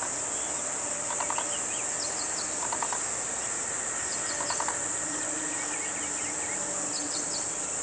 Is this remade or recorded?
recorded